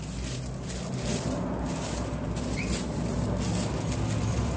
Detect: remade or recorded recorded